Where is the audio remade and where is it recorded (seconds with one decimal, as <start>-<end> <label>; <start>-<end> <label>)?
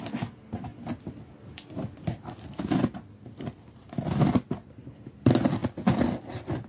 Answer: 0.0-6.7 recorded